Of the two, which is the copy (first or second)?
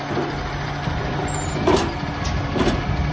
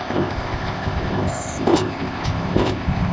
second